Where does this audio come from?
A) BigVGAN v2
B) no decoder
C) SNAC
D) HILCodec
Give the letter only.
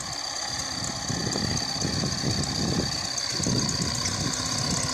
B